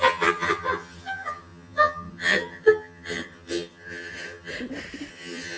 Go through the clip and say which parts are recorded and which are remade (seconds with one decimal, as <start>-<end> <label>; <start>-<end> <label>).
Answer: 0.0-4.5 remade; 4.5-5.1 recorded; 5.1-5.6 remade